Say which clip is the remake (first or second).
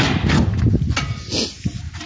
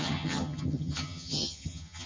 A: second